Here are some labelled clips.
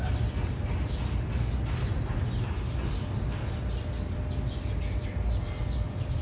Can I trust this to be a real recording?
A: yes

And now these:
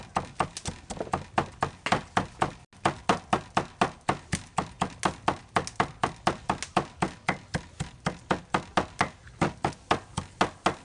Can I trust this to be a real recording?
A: yes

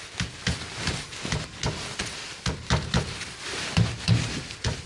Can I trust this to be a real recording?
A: yes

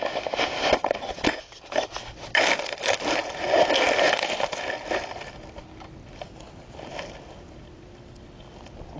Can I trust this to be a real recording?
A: yes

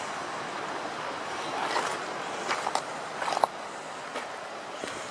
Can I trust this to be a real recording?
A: yes